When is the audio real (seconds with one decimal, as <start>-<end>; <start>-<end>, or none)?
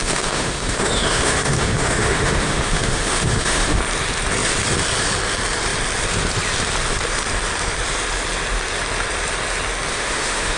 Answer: 3.8-9.9